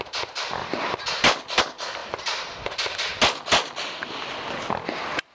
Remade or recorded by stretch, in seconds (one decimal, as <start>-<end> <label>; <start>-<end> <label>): 0.0-2.0 recorded; 2.0-3.1 remade; 3.1-5.3 recorded